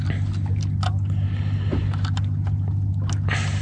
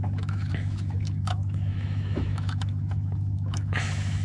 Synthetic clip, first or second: second